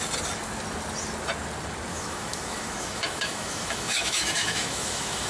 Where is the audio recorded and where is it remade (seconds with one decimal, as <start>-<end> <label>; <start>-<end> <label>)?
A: 0.0-1.9 recorded; 1.9-5.3 remade